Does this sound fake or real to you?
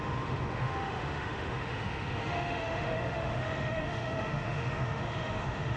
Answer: fake